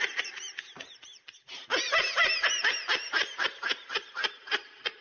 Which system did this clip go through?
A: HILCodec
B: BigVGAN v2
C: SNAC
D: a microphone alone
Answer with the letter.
B